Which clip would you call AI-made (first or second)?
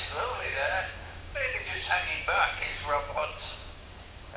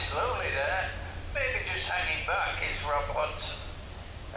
first